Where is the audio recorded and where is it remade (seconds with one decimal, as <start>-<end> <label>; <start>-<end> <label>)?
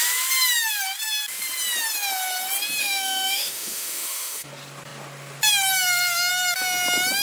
0.0-2.8 recorded; 2.8-4.5 remade; 4.5-7.2 recorded